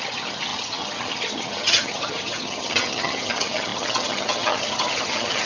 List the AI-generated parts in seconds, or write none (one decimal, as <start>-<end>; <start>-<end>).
0.0-5.5